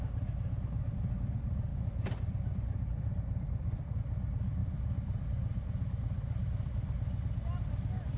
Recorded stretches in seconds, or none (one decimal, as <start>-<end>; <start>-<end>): 0.0-1.7; 4.0-4.6